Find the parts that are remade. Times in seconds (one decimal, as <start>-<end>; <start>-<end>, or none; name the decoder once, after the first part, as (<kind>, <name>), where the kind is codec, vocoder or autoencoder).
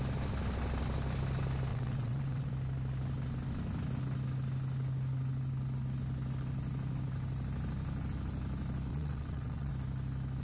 1.7-2.5 (vocoder, WaveNeXt); 8.9-9.7